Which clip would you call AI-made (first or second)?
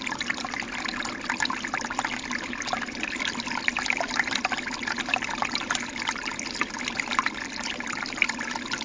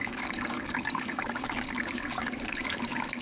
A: second